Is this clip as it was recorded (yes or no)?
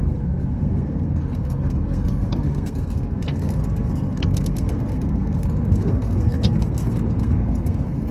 no